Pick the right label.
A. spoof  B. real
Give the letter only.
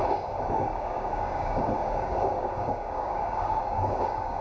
A